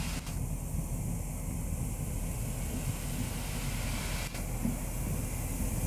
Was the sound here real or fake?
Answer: real